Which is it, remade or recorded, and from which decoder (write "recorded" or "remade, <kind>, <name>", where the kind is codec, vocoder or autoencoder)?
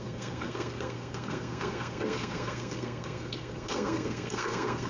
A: remade, codec, SNAC